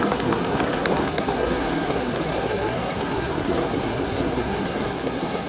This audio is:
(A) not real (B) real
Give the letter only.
A